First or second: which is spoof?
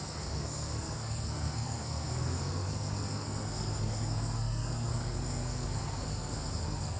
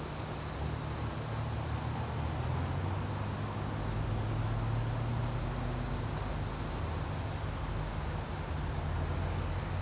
first